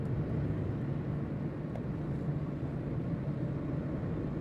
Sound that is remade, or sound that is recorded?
recorded